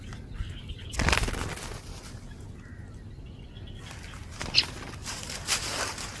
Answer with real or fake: real